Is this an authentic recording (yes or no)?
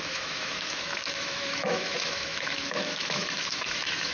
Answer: no